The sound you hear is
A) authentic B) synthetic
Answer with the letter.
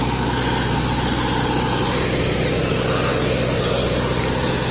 A